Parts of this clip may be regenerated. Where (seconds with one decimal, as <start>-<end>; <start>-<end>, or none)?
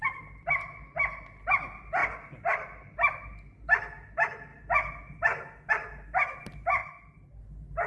none